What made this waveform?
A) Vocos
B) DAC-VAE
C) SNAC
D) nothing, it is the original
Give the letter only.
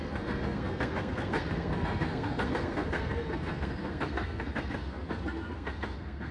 C